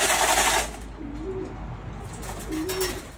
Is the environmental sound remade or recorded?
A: recorded